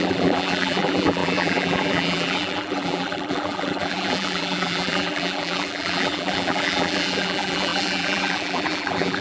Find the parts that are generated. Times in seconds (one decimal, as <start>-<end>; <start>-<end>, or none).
0.0-9.2